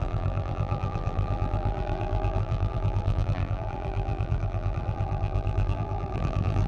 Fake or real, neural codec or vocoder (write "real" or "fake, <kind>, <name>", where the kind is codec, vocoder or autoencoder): fake, vocoder, BigVGAN v2